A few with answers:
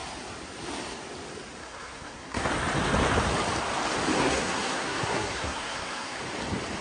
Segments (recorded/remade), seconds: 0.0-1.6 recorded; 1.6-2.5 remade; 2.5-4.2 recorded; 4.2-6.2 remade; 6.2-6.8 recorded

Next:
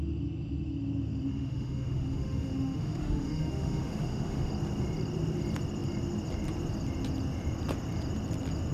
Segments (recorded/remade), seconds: 0.0-1.3 recorded; 1.3-4.5 remade; 4.5-8.7 recorded

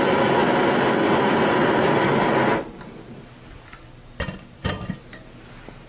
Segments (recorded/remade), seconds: 0.0-5.9 recorded

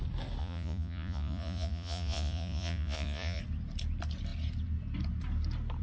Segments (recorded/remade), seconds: 0.0-0.4 recorded; 0.4-3.4 remade; 3.4-5.8 recorded

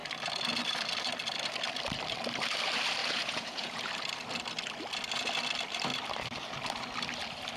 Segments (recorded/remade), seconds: 0.0-3.0 recorded; 3.0-3.8 remade; 3.8-7.6 recorded